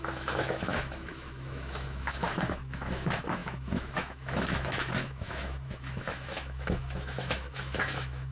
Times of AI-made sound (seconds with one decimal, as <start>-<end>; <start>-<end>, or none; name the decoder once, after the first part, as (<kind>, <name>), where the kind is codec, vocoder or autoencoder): 0.0-8.3 (autoencoder, DAC-VAE)